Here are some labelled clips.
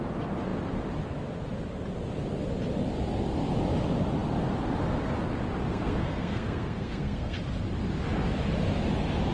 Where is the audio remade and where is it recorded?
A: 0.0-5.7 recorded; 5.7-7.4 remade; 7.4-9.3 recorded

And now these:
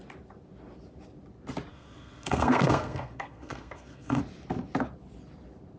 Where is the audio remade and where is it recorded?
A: 0.0-1.7 recorded; 1.7-4.2 remade; 4.2-5.8 recorded